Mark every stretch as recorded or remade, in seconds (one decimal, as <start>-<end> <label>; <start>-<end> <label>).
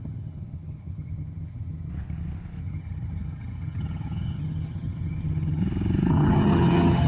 0.0-1.9 remade; 1.9-2.6 recorded; 2.6-5.6 remade; 5.6-6.1 recorded; 6.1-7.1 remade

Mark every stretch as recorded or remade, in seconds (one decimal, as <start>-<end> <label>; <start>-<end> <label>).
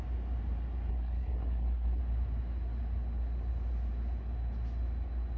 0.0-0.9 recorded; 0.9-2.0 remade; 2.0-5.4 recorded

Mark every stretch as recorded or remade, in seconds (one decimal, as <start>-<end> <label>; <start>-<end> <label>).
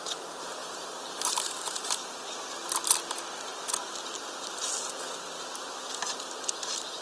0.0-0.6 recorded; 0.6-2.2 remade; 2.2-7.0 recorded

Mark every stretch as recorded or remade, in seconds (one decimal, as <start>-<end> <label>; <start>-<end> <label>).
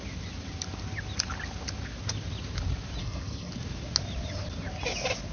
0.0-3.0 recorded; 3.0-3.5 remade; 3.5-5.3 recorded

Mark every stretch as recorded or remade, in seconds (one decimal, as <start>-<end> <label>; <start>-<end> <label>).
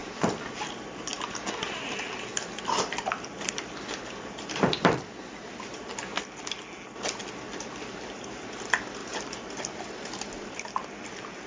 0.0-1.1 remade; 1.1-1.6 recorded; 1.6-5.9 remade; 5.9-7.2 recorded; 7.2-11.5 remade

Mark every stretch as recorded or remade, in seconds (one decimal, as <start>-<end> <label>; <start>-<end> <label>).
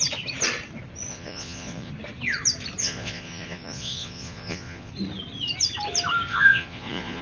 0.0-1.1 recorded; 1.1-1.9 remade; 1.9-2.8 recorded; 2.8-4.9 remade; 4.9-6.3 recorded; 6.3-7.2 remade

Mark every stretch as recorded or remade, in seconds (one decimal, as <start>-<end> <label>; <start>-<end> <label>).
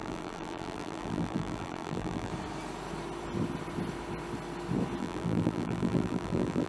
0.0-2.3 remade; 2.3-5.0 recorded; 5.0-6.7 remade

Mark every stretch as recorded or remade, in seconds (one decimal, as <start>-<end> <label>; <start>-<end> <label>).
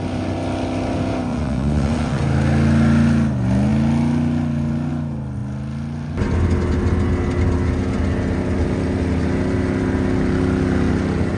0.0-1.3 recorded; 1.3-2.2 remade; 2.2-11.4 recorded